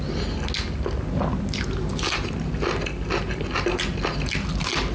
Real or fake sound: real